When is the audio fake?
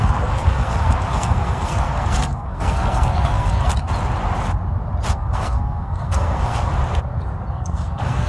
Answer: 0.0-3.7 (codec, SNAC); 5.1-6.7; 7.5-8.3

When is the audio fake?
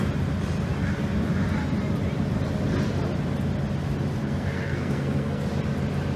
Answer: 4.2-5.5 (codec, SNAC)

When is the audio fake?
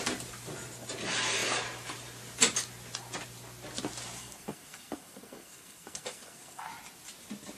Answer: 4.2-6.7 (codec, SNAC)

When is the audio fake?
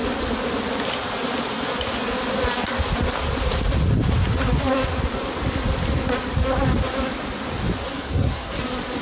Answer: 7.9-8.6 (codec, SNAC)